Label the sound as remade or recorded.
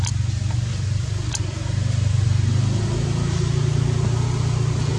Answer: recorded